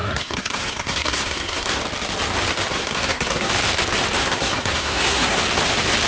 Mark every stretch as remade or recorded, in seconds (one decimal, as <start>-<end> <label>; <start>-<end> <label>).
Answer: 0.0-1.8 remade; 1.8-2.7 recorded; 2.7-3.5 remade; 3.5-4.2 recorded; 4.2-5.4 remade; 5.4-6.1 recorded